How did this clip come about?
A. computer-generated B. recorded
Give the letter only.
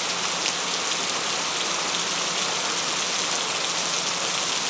B